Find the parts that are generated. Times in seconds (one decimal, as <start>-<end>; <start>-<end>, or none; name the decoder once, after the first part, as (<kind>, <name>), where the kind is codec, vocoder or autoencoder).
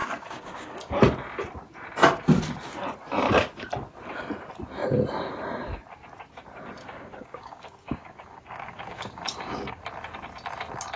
0.0-1.0 (codec, DAC); 6.8-9.8